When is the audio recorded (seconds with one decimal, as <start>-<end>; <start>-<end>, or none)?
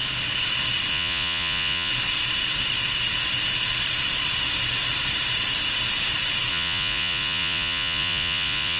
0.0-0.9; 1.9-6.5